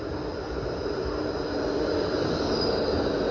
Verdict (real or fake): real